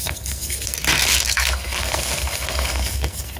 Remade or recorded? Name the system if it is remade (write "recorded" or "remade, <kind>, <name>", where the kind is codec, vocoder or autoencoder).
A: remade, codec, SNAC